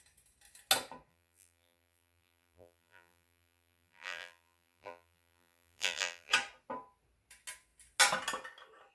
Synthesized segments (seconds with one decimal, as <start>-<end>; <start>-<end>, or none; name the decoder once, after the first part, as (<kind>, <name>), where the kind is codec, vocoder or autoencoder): 1.1-6.3 (vocoder, BigVGAN v2)